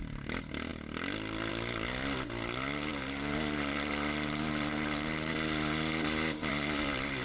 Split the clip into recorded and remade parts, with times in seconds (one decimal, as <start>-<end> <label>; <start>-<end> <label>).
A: 0.0-7.2 recorded